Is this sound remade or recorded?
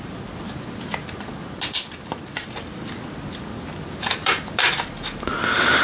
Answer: recorded